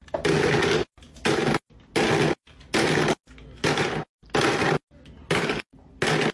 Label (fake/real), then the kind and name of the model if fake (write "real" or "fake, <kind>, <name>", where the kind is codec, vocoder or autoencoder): real